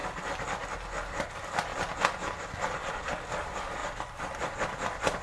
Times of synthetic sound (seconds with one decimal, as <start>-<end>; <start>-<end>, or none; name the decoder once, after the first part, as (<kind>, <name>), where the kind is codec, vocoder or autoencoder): 1.0-5.2 (vocoder, BigVGAN v2)